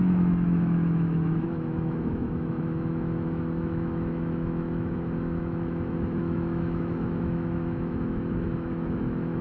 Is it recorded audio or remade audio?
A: remade